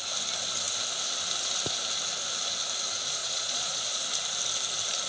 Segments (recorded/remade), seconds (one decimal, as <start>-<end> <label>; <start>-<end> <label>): 0.0-3.2 recorded; 3.2-4.0 remade; 4.0-5.1 recorded